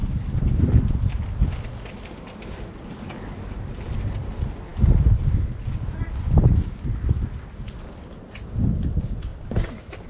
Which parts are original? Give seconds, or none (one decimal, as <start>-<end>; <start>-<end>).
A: 0.9-9.3